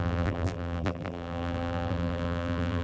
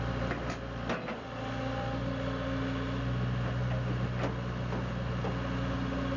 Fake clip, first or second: first